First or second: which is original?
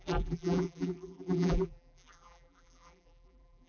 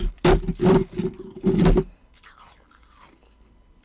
second